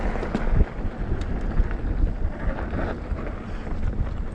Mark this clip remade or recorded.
recorded